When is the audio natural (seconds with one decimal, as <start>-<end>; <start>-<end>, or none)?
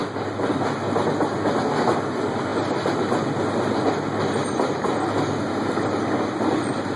0.0-7.0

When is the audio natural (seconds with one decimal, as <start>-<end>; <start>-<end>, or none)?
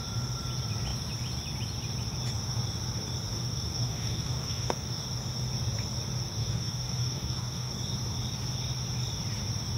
0.0-3.3; 5.0-6.4; 7.7-9.8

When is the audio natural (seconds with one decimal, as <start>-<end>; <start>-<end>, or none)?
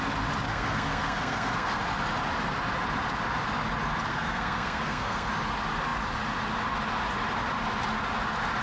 0.0-0.5; 1.8-4.1; 5.3-8.6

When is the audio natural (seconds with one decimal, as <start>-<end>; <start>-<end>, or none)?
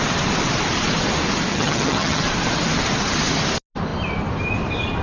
0.0-1.5; 2.2-5.0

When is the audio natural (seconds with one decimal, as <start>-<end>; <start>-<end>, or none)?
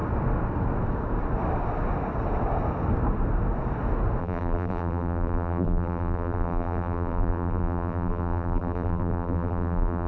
0.0-4.2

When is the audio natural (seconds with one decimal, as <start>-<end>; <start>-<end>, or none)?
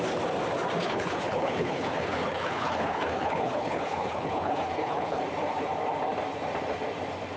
0.0-0.8; 5.2-7.4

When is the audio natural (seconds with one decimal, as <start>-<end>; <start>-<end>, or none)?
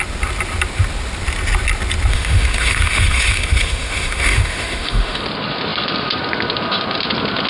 0.0-2.1; 5.2-7.5